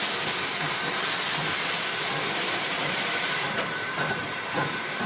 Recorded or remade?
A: remade